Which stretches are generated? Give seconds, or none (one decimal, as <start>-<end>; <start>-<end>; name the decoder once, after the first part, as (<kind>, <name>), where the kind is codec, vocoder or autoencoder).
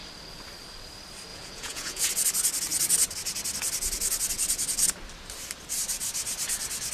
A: 1.3-2.1 (vocoder, Vocos)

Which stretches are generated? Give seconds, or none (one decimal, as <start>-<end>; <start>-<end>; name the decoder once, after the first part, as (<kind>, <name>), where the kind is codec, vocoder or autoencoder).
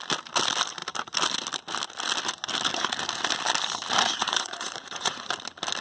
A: 4.2-5.3 (vocoder, Vocos)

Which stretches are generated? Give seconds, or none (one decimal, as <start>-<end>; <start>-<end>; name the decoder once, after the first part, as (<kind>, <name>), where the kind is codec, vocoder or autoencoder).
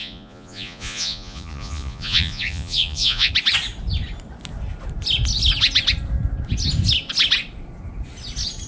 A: 0.0-3.3 (vocoder, Vocos)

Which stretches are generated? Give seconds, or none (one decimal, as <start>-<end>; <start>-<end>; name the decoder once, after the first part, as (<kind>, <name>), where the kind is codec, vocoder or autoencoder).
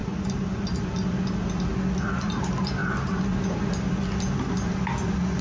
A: none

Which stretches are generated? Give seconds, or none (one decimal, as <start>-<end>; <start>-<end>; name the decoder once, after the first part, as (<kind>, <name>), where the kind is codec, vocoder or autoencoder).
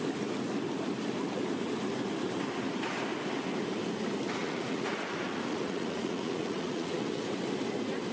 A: 4.4-7.3 (vocoder, Vocos)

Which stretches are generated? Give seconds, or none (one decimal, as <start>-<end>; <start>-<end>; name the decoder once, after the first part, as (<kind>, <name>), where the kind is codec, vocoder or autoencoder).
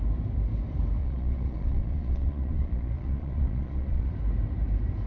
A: 1.0-4.1 (vocoder, Vocos)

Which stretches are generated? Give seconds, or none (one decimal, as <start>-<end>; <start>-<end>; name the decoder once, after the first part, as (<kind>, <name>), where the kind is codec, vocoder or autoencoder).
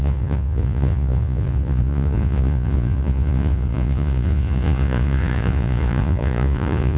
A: 0.0-7.0 (vocoder, Vocos)